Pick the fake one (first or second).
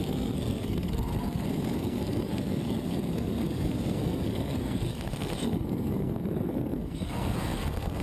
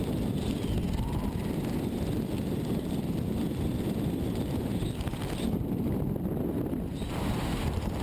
first